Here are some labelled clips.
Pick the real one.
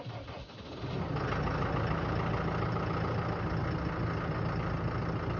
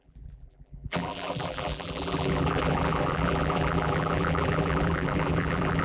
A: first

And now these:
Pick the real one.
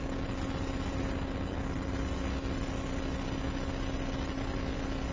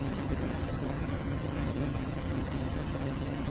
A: first